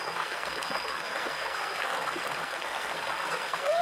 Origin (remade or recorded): remade